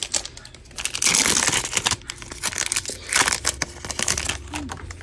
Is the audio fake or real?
real